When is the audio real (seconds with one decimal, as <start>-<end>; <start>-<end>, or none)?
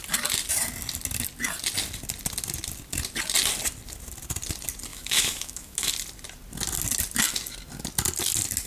0.0-4.9; 5.9-8.7